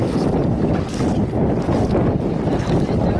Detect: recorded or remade recorded